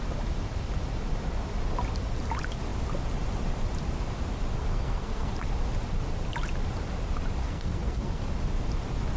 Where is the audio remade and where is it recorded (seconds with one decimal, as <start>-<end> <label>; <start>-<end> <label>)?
0.0-4.6 recorded; 4.6-5.3 remade; 5.3-7.4 recorded; 7.4-8.3 remade; 8.3-9.2 recorded